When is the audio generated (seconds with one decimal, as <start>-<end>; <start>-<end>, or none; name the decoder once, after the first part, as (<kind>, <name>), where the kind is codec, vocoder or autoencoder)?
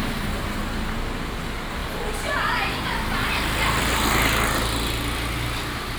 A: none